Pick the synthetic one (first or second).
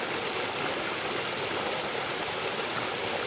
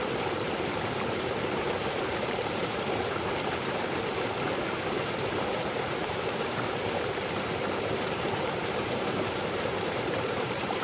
second